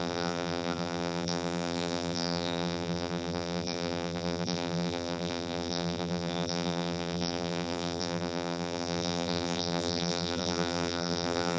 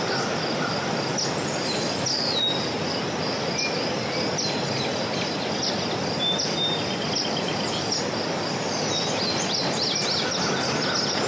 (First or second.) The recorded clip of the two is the second